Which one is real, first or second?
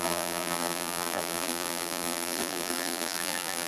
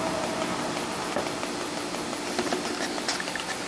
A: second